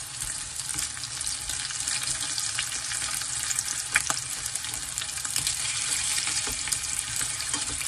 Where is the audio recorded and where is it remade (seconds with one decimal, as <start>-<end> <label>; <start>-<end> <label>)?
0.0-0.7 remade; 0.7-5.0 recorded; 5.0-7.9 remade